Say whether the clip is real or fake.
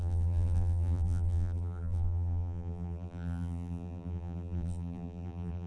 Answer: fake